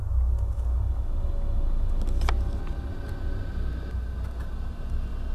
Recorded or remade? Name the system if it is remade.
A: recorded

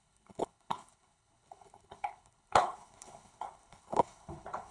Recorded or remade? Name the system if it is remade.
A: remade, codec, HILCodec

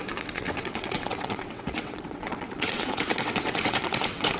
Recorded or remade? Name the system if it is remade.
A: remade, vocoder, WaveNeXt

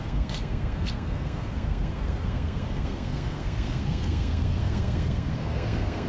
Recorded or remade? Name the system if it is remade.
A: remade, codec, SNAC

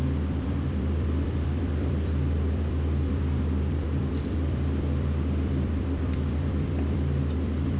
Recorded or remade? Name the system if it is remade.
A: remade, vocoder, BigVGAN v2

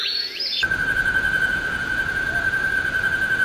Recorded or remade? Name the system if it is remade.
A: remade, vocoder, Vocos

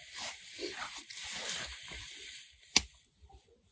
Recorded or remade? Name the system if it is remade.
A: recorded